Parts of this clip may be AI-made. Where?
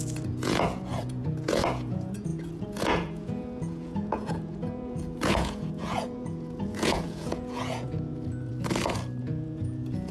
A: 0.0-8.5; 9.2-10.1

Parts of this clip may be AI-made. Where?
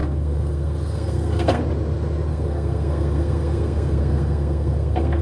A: 0.0-1.6; 2.3-5.2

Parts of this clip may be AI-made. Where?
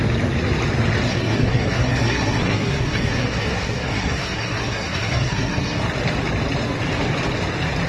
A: 1.1-5.8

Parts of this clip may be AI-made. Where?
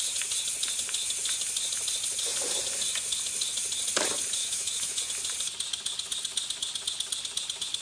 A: 4.4-5.0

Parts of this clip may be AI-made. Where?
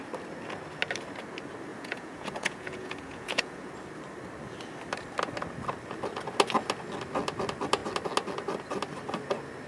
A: 1.7-3.7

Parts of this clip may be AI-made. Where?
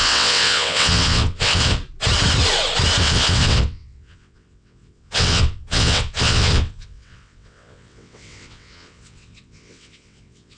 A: 0.0-1.8; 3.0-10.6